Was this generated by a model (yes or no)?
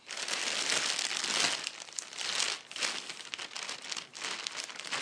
no